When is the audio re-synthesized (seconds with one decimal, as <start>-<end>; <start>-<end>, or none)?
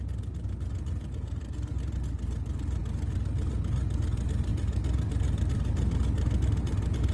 none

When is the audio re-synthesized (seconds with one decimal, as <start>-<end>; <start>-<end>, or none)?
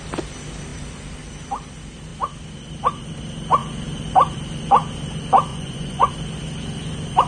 5.5-6.1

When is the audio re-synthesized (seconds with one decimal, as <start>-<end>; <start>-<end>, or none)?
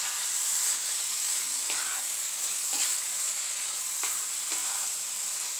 0.7-4.1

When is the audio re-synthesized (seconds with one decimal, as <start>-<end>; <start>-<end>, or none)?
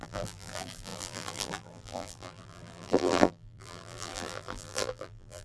0.0-5.4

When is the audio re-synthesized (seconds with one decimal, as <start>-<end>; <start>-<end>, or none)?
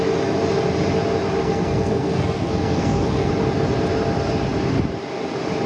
1.4-3.3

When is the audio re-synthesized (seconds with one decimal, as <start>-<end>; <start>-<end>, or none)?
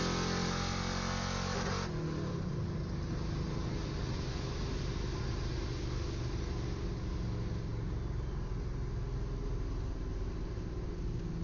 none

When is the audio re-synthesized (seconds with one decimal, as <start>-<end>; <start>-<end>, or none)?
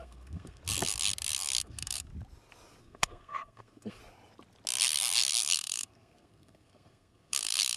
0.0-0.6; 1.6-2.1; 2.8-4.0; 5.3-7.8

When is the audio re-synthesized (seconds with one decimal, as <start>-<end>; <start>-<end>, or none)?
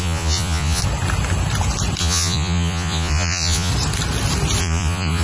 0.0-0.8; 2.0-3.7; 4.6-5.2